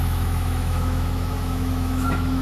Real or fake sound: fake